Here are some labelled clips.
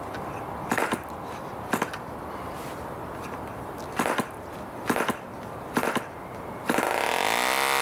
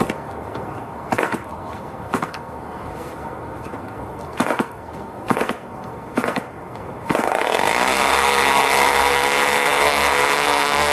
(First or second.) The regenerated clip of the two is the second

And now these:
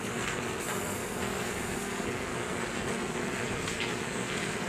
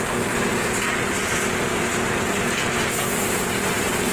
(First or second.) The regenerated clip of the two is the first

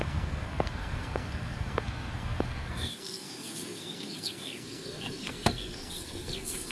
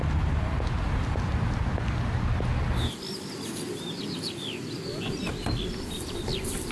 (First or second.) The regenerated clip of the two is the first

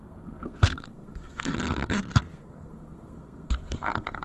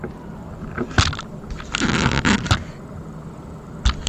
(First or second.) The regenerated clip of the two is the first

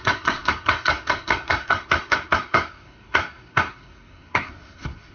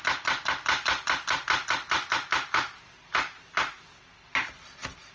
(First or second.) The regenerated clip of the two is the first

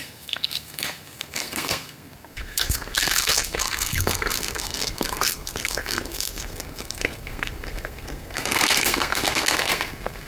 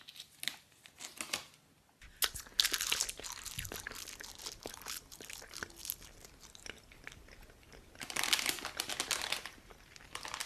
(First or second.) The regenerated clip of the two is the first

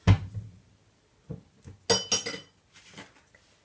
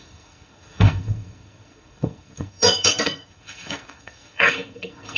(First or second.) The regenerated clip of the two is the second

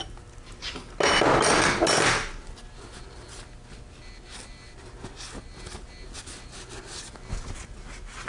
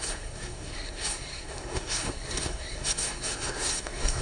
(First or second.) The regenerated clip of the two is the second